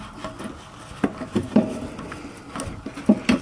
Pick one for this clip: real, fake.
real